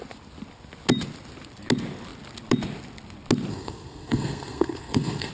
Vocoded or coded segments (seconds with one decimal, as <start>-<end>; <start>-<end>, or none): 3.5-5.3